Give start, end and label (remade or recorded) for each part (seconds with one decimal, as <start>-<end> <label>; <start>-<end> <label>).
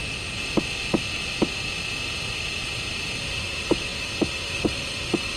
0.0-3.2 recorded; 3.2-5.4 remade